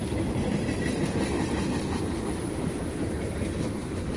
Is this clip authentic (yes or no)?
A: yes